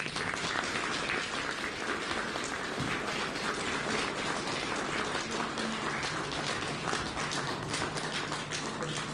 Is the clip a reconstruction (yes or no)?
no